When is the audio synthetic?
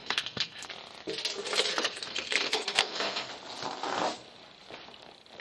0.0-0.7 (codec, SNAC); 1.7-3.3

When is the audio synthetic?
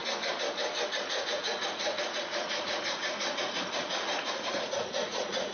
1.0-5.5 (vocoder, Vocos)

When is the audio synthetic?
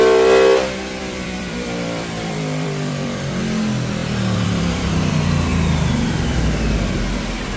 1.0-3.4 (vocoder, BigVGAN v2); 4.0-5.1